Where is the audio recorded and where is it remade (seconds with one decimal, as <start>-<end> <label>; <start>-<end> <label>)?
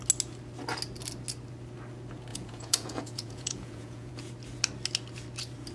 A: 0.0-2.3 recorded; 2.3-4.1 remade; 4.1-5.7 recorded